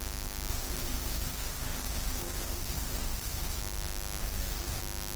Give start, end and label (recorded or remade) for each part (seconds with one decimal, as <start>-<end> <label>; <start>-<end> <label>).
0.0-0.5 recorded; 0.5-3.6 remade; 3.6-4.2 recorded; 4.2-4.8 remade; 4.8-5.2 recorded